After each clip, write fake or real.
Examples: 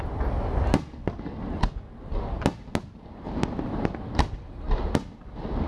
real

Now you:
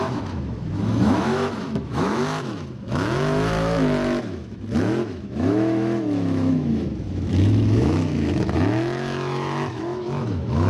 fake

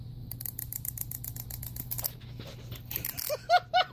real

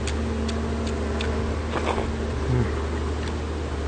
real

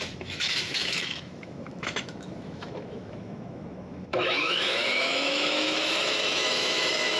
fake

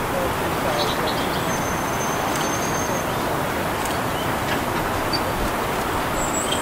real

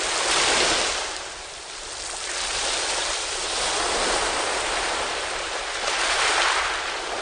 real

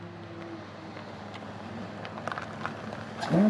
real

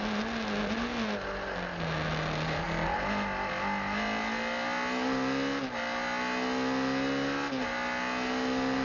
real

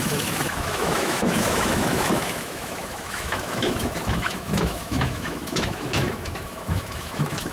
fake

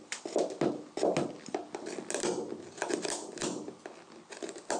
real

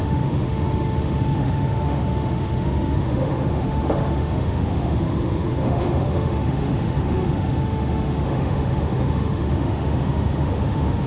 fake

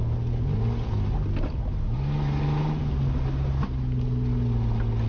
real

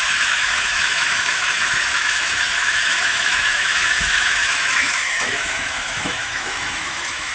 fake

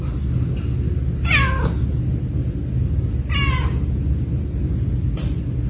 real